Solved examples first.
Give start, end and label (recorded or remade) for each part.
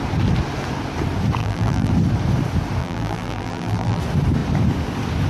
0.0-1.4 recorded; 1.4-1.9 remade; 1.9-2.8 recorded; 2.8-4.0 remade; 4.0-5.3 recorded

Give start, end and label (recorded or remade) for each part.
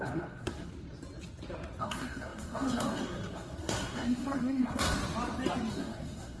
0.0-0.7 remade; 0.7-1.8 recorded; 1.8-5.0 remade; 5.0-5.7 recorded; 5.7-6.4 remade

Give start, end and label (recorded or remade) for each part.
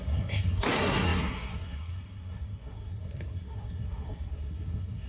0.0-5.1 remade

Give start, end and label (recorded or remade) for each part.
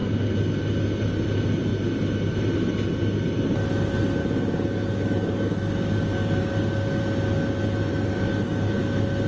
0.0-4.2 recorded; 4.2-7.0 remade; 7.0-7.9 recorded; 7.9-8.8 remade; 8.8-9.3 recorded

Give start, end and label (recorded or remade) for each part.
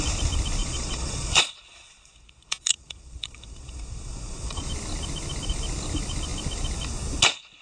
0.0-0.6 recorded; 0.6-4.7 remade; 4.7-7.6 recorded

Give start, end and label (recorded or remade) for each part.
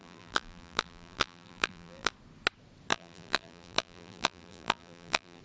0.0-2.1 remade; 2.1-2.9 recorded; 2.9-5.4 remade